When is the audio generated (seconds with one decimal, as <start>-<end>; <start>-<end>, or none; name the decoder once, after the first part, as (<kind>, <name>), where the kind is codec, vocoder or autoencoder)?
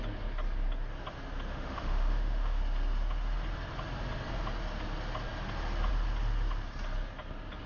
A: 1.5-2.6 (autoencoder, DAC-VAE)